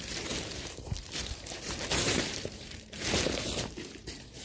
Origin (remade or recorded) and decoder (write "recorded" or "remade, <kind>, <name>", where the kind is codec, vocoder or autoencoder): remade, vocoder, BigVGAN v2